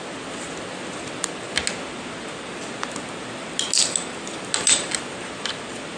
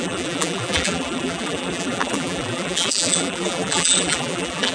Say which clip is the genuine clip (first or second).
first